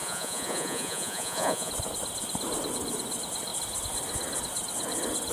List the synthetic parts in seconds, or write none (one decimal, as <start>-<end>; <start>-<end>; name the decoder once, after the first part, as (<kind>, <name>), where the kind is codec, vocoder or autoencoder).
0.0-1.7 (vocoder, Vocos)